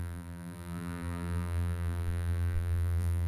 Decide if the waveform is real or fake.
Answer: fake